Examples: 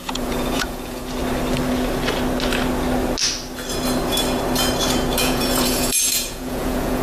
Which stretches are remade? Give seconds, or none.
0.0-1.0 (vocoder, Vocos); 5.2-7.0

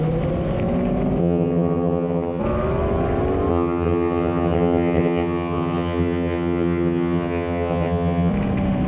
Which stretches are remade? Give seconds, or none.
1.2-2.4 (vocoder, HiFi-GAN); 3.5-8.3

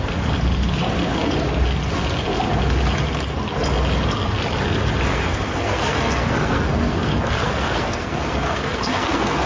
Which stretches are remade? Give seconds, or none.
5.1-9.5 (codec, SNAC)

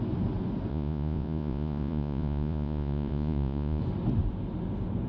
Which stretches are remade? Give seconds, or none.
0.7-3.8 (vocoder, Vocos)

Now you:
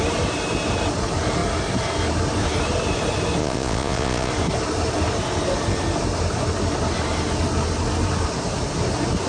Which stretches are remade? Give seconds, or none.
3.4-4.3 (vocoder, Vocos)

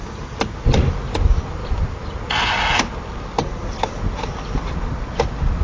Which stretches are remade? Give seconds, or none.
none

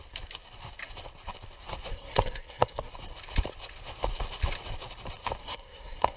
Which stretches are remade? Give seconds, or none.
1.9-2.9 (codec, SNAC); 5.4-6.2